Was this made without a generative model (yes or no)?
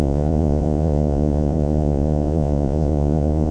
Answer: no